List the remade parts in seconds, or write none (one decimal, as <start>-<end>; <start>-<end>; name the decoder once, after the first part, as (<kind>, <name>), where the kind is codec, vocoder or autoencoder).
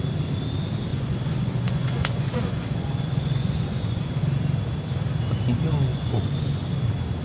0.9-4.2 (vocoder, Vocos); 5.9-6.6